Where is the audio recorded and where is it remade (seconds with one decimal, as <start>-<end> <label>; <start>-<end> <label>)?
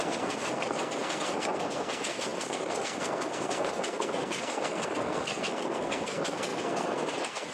0.0-7.5 remade